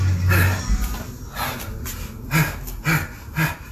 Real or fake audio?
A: real